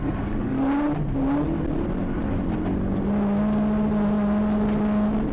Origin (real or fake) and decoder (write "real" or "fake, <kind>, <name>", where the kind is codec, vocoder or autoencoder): real